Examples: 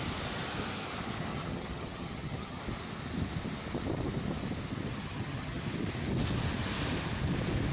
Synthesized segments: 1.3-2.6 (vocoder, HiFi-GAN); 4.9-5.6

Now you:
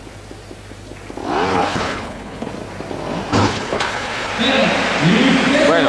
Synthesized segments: 1.5-2.5 (codec, HILCodec); 3.3-4.3

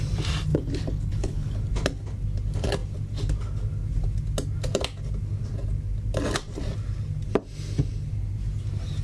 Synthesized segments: 0.5-1.6 (codec, HILCodec)

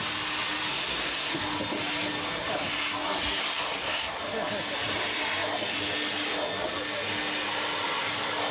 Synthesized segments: 0.7-1.4 (codec, SNAC); 3.4-4.2

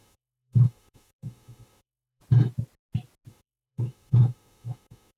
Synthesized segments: 0.0-2.2 (autoencoder, DAC-VAE); 3.3-5.2